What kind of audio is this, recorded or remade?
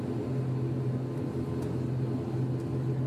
recorded